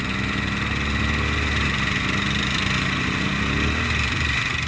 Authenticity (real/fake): real